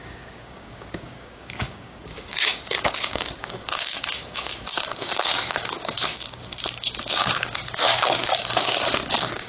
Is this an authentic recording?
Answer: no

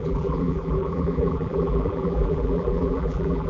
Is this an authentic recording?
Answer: no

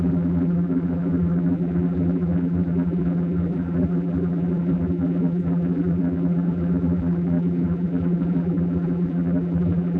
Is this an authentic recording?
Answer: no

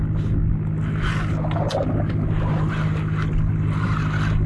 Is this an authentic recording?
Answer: yes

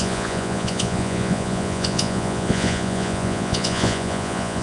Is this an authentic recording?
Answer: no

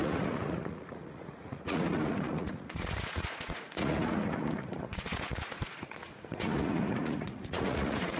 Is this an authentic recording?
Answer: no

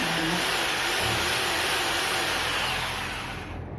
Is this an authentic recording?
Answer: yes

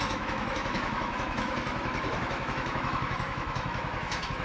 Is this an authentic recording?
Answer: no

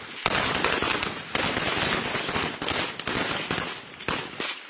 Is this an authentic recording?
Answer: yes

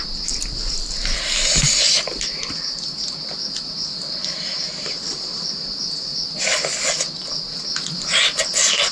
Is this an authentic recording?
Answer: yes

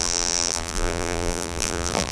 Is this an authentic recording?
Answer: no